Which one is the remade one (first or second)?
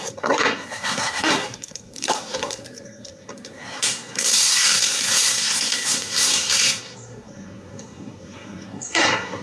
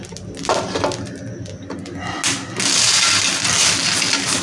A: first